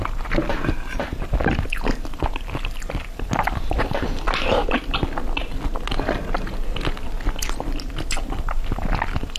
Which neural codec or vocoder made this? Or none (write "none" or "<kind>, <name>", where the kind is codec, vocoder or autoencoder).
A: none